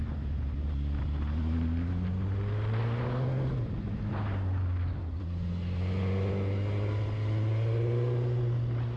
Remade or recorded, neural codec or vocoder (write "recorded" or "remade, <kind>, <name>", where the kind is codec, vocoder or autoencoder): recorded